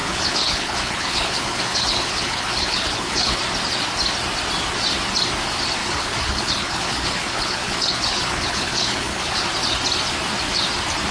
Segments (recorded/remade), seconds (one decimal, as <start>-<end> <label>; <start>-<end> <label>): 0.0-3.4 remade; 3.4-5.8 recorded; 5.8-9.5 remade; 9.5-11.1 recorded